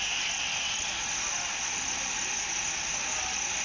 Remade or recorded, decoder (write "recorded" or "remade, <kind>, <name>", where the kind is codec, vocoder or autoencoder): recorded